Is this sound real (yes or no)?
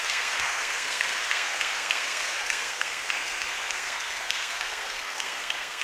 no